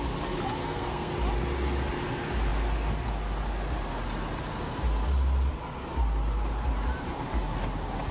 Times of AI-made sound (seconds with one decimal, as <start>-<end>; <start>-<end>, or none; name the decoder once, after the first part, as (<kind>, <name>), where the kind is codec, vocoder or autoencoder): 0.6-1.1 (codec, SNAC)